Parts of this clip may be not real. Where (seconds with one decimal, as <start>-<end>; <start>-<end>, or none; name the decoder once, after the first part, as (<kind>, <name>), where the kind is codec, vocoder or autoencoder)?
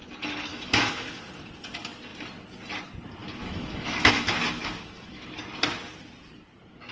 0.5-1.2 (autoencoder, DAC-VAE); 3.2-5.4